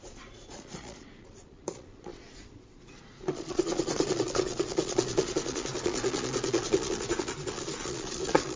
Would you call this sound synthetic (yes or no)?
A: yes